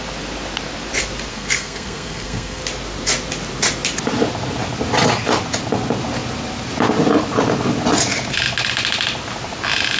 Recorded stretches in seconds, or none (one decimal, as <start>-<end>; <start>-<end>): 0.0-1.3; 2.6-10.0